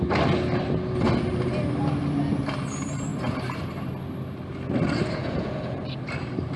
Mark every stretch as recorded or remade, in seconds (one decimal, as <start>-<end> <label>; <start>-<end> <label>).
0.0-5.2 recorded; 5.2-5.8 remade; 5.8-6.6 recorded